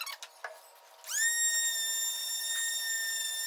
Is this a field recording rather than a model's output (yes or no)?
yes